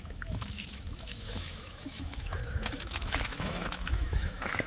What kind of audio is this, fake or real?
fake